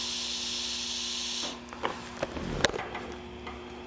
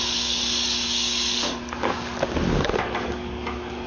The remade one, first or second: second